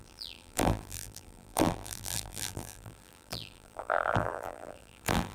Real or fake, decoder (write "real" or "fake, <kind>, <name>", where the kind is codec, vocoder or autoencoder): fake, vocoder, BigVGAN v2